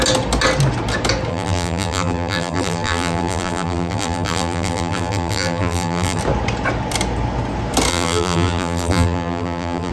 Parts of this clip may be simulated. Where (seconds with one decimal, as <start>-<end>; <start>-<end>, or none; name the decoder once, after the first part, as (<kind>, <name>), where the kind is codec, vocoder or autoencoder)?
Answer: 1.3-6.2 (vocoder, BigVGAN v2); 7.9-9.9